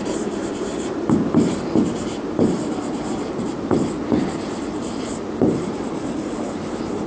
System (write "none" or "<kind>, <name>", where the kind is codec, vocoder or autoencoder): vocoder, BigVGAN v2